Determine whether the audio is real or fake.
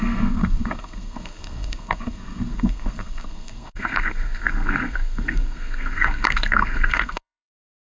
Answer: fake